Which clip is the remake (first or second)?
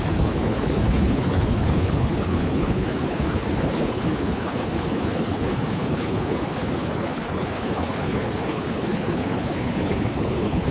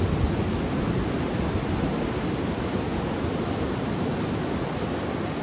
first